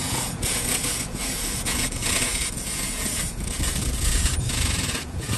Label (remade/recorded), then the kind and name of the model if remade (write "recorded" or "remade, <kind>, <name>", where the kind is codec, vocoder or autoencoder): remade, vocoder, Vocos